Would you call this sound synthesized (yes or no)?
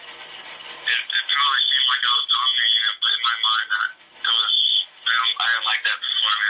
no